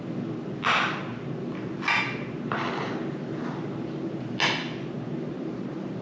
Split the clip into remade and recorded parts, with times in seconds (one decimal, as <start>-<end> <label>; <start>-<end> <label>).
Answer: 0.0-6.0 recorded